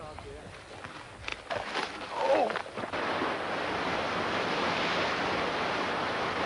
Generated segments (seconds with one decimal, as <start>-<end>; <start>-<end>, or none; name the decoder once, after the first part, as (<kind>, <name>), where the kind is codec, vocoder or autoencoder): none